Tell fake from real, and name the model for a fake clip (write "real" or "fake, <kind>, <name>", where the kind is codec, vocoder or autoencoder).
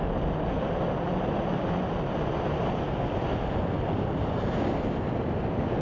real